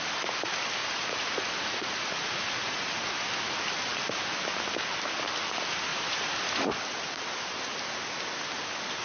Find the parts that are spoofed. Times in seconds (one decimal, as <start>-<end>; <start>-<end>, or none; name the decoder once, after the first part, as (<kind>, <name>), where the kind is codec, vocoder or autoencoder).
0.8-3.2 (vocoder, Vocos); 5.9-6.8